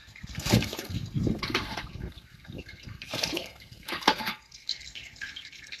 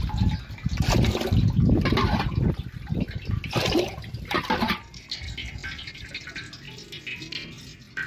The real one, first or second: second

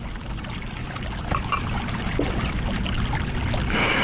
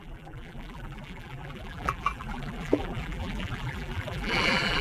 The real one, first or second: first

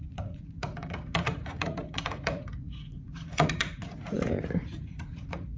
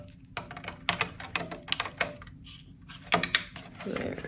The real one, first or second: second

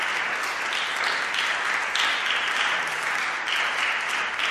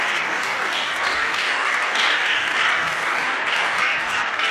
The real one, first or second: first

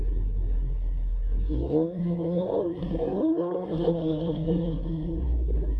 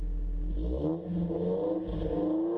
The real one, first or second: second